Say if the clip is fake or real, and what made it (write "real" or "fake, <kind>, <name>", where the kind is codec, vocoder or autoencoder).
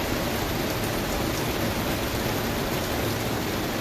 real